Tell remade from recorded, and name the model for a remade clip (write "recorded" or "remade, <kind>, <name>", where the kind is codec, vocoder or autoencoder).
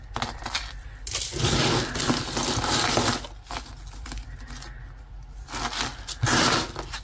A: recorded